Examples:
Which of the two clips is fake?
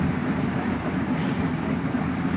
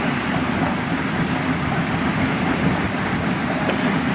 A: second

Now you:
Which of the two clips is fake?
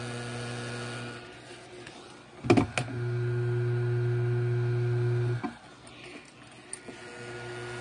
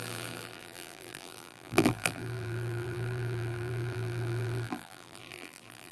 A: second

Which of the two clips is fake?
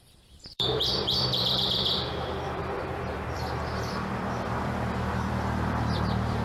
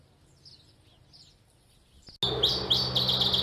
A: first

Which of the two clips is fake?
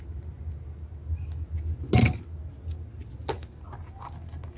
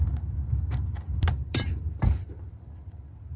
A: second